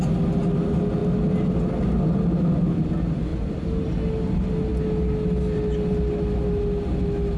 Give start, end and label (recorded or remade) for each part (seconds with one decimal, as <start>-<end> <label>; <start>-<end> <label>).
0.0-7.4 recorded